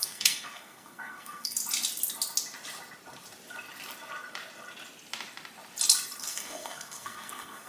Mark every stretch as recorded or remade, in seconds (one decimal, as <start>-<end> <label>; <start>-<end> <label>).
0.0-1.6 remade; 1.6-6.2 recorded; 6.2-7.7 remade